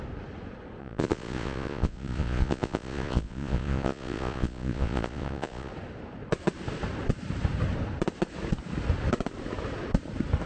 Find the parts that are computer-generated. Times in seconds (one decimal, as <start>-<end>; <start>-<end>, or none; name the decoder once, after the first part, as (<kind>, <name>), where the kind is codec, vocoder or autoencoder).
0.8-5.7 (vocoder, Vocos)